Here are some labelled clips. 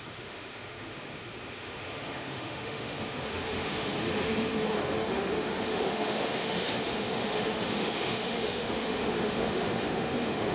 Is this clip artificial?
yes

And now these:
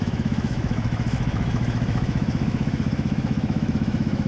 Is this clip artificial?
yes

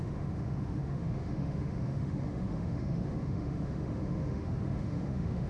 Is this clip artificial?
yes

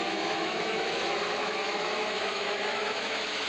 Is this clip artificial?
yes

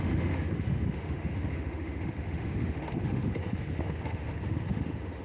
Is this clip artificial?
yes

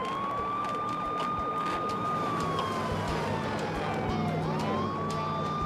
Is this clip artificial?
no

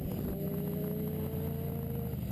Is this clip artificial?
no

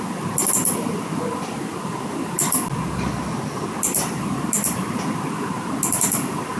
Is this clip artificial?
no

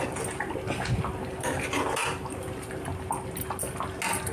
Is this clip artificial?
no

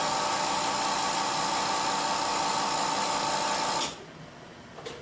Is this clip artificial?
no